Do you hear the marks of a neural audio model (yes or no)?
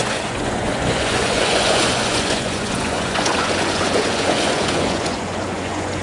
yes